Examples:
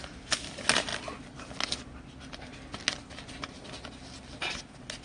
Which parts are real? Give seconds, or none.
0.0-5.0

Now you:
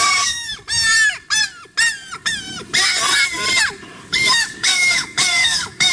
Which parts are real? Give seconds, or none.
0.5-4.0

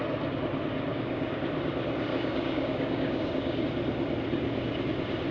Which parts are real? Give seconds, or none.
0.0-0.9; 1.4-2.1; 3.6-5.3

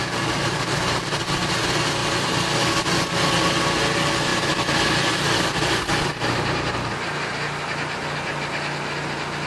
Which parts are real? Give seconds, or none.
0.0-9.5

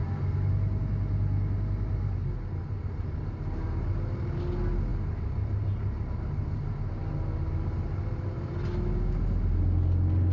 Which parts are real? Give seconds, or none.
0.0-10.3

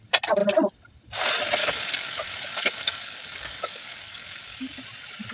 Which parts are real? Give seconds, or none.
0.0-1.6; 4.8-5.3

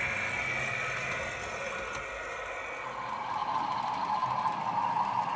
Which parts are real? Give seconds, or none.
0.0-5.4